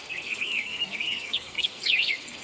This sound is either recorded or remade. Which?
remade